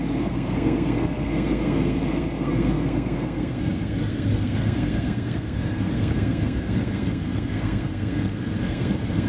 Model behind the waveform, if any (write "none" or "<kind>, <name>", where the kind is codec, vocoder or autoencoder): codec, SNAC